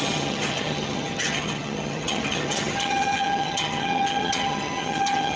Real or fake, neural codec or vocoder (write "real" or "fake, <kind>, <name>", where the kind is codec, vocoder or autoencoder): fake, vocoder, HiFi-GAN